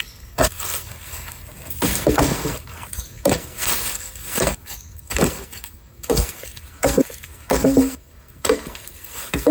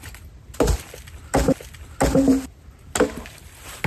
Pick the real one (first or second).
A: second